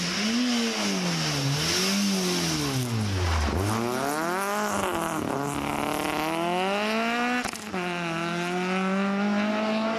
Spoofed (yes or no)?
no